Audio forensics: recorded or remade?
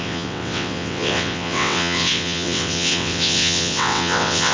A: remade